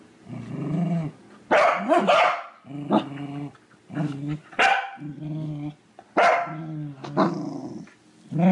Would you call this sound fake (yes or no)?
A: no